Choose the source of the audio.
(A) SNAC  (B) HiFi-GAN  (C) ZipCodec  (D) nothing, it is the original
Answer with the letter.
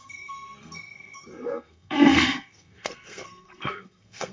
A